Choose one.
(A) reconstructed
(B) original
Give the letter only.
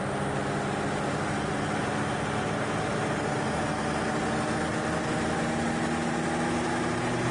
B